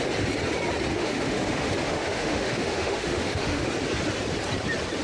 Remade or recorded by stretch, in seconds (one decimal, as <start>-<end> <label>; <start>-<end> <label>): 0.0-0.9 recorded; 0.9-3.7 remade; 3.7-5.0 recorded